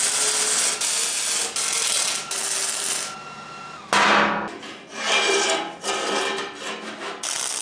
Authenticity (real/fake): real